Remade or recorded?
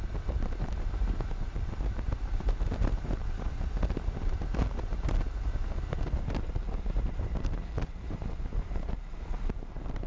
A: remade